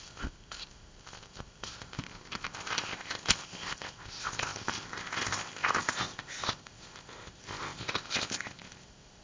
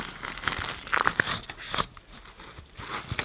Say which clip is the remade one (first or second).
first